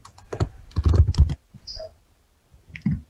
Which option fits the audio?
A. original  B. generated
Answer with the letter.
A